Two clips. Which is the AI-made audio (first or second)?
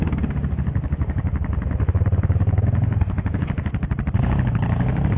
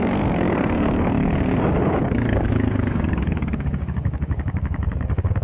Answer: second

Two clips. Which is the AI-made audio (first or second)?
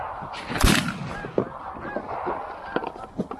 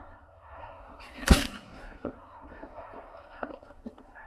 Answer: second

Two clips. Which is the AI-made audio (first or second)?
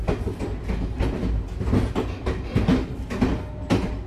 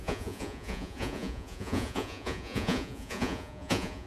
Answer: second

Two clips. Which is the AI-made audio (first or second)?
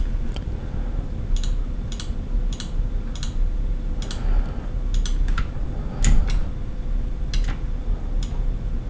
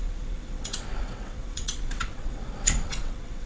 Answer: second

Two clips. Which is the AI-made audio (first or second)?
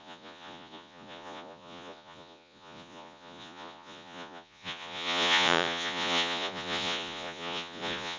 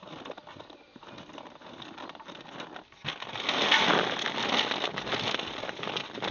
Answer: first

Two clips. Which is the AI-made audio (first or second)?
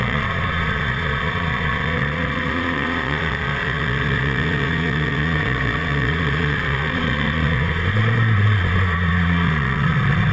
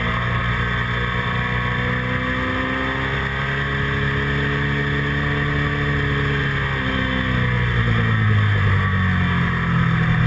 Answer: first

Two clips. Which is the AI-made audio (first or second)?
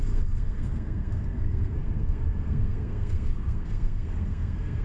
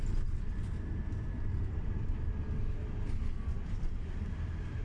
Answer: first